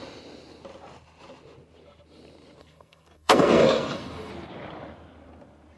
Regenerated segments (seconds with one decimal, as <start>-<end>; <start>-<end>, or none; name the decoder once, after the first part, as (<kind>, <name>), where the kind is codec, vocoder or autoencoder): 2.6-4.3 (codec, SNAC)